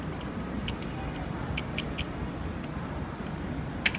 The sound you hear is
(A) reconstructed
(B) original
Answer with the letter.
B